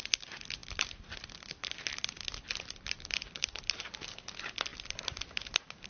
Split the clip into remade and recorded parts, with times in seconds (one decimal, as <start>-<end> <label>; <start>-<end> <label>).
0.0-0.6 recorded; 0.6-4.1 remade; 4.1-4.7 recorded; 4.7-5.3 remade; 5.3-5.9 recorded

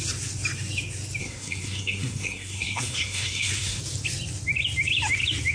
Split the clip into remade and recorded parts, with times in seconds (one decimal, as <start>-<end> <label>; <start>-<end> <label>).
0.0-1.2 recorded; 1.2-3.8 remade; 3.8-5.5 recorded

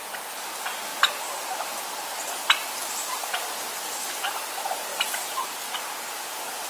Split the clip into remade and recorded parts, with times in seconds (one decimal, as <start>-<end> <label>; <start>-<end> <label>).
0.0-4.9 recorded; 4.9-5.5 remade; 5.5-6.7 recorded

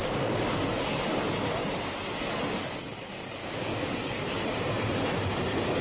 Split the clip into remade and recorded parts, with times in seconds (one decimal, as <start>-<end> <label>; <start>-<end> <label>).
0.0-3.4 recorded; 3.4-4.4 remade; 4.4-5.8 recorded

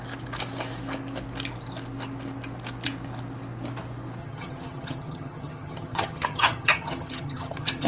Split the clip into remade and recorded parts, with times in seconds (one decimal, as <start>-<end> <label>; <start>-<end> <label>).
0.0-4.2 recorded; 4.2-7.9 remade

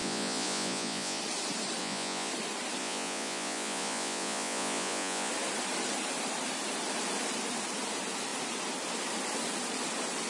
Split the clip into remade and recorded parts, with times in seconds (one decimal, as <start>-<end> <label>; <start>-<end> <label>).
0.0-1.2 remade; 1.2-1.8 recorded; 1.8-2.3 remade; 2.3-2.8 recorded; 2.8-5.3 remade; 5.3-10.3 recorded

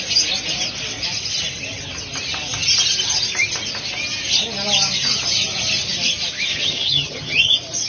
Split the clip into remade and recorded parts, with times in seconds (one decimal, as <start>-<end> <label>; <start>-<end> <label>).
0.0-6.5 recorded; 6.5-7.5 remade; 7.5-7.9 recorded